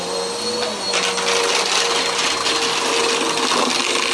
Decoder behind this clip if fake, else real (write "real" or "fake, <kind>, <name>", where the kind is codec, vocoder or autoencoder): real